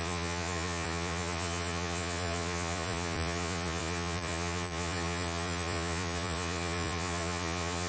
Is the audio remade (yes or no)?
yes